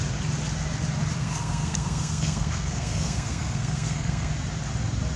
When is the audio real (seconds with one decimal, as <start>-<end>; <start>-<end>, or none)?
0.0-1.2; 4.3-5.2